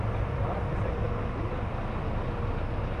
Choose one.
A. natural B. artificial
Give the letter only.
A